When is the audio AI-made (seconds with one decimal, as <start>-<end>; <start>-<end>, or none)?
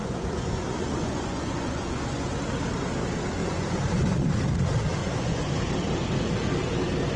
0.0-2.3; 3.4-4.3; 5.0-5.7